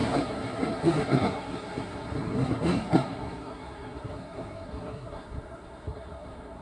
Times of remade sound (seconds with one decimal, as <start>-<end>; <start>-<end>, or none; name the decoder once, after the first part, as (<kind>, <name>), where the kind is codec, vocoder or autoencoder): 0.0-6.6 (codec, SNAC)